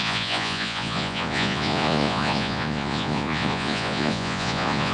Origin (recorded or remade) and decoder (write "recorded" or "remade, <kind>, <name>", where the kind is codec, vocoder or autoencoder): remade, vocoder, Vocos